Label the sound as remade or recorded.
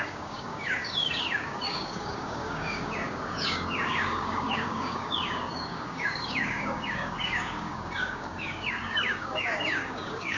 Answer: remade